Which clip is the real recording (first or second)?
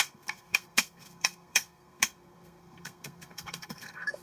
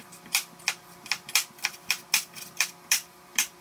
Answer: second